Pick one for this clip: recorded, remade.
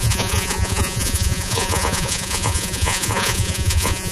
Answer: remade